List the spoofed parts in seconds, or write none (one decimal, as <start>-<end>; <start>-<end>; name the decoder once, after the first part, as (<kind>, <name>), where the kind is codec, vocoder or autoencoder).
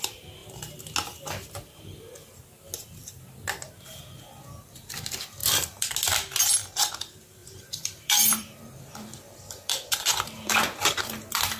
5.4-5.9 (vocoder, BigVGAN v2); 7.4-11.6